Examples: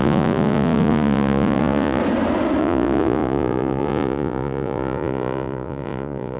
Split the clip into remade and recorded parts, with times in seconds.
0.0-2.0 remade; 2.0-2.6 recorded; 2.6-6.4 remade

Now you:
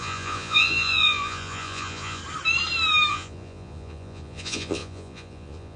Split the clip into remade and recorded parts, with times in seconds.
0.0-2.2 remade; 2.2-3.1 recorded; 3.1-5.8 remade

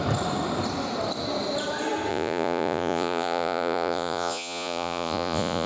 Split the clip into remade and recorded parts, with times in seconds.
0.0-2.1 recorded; 2.1-5.7 remade

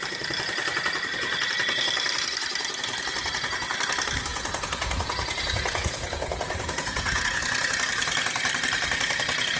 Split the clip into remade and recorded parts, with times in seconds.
0.0-4.3 recorded; 4.3-7.4 remade; 7.4-9.6 recorded